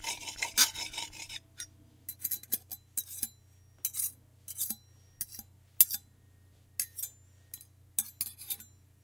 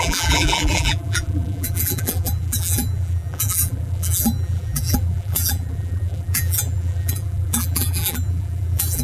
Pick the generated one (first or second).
second